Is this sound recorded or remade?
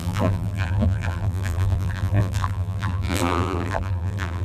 remade